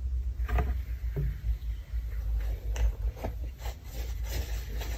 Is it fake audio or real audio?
real